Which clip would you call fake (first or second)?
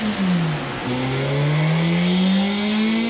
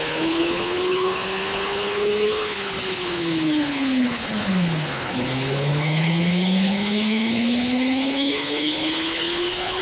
second